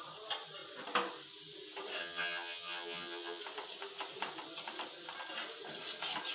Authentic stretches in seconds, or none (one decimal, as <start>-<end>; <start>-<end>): 0.0-2.0; 3.4-6.3